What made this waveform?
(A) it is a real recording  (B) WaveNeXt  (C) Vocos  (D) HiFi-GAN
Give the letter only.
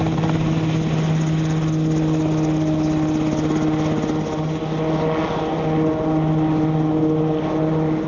A